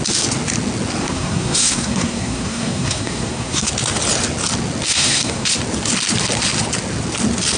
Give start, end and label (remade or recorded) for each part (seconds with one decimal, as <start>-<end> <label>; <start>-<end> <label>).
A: 0.0-1.0 recorded; 1.0-3.7 remade; 3.7-4.9 recorded; 4.9-5.5 remade; 5.5-7.6 recorded